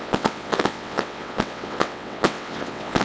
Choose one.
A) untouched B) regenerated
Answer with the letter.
B